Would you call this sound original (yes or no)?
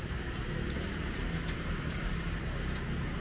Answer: no